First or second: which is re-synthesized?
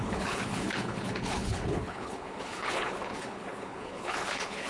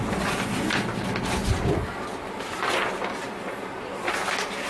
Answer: first